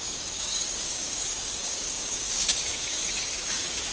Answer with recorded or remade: remade